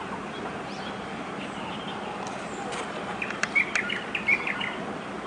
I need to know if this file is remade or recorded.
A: recorded